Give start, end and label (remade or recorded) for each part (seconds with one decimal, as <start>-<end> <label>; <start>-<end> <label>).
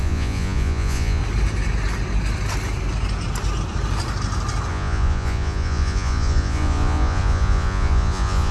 0.0-1.2 remade; 1.2-4.7 recorded; 4.7-8.5 remade